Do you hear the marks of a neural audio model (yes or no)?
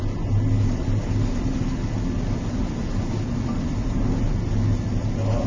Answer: no